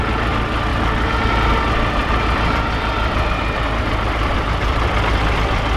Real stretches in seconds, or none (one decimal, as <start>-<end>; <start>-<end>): 0.0-0.7; 1.3-2.0